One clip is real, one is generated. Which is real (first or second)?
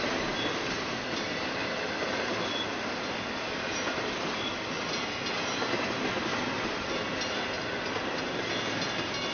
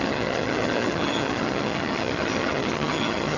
first